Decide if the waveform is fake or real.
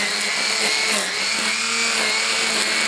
real